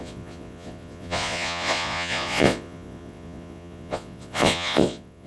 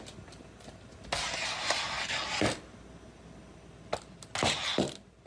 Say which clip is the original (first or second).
second